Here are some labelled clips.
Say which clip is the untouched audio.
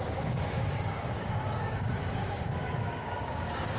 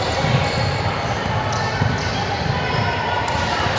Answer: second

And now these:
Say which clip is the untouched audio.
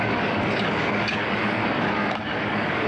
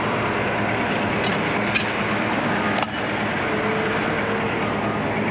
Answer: second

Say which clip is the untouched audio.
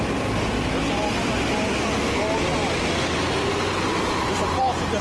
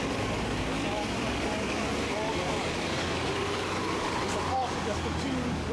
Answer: first